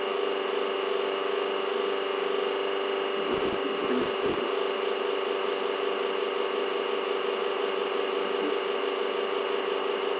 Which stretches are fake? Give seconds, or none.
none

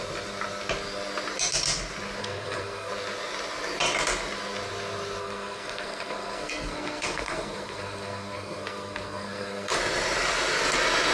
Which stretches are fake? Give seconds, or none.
2.2-2.9 (codec, SNAC); 5.2-9.7

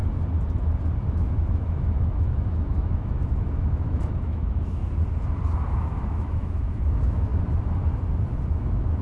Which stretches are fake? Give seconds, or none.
1.1-4.8 (autoencoder, DAC-VAE); 5.7-7.3; 8.5-9.0

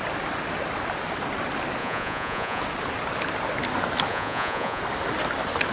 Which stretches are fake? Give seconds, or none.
1.8-2.6 (vocoder, Vocos); 4.1-4.8

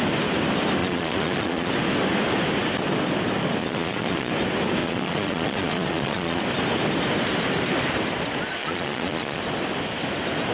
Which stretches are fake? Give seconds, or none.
0.8-1.7 (vocoder, Vocos); 3.6-4.3; 4.8-6.4; 8.6-9.4

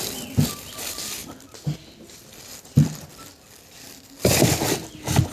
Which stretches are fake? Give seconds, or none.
1.2-4.4 (vocoder, BigVGAN v2)

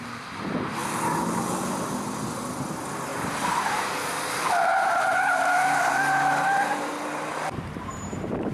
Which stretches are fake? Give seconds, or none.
3.1-6.0 (vocoder, BigVGAN v2); 7.3-8.5

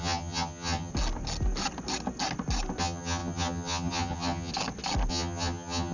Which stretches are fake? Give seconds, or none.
0.0-0.9 (vocoder, HiFi-GAN); 2.8-4.5; 5.1-5.9